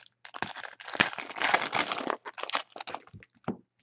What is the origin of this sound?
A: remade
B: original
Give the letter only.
B